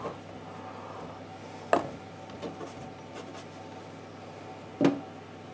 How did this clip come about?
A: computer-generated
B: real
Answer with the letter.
B